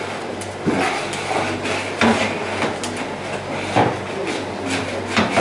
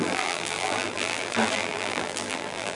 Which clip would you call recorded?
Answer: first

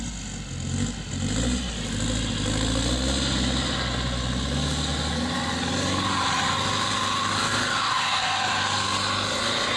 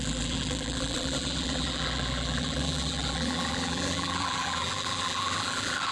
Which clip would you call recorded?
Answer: first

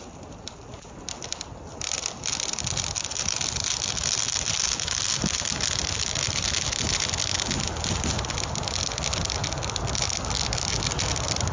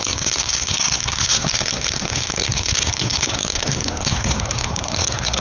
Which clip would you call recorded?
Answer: first